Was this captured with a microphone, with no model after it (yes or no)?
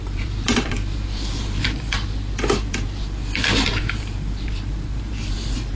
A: no